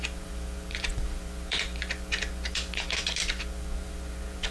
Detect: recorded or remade remade